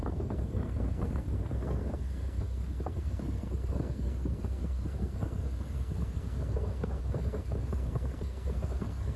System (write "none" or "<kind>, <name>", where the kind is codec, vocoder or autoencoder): codec, SNAC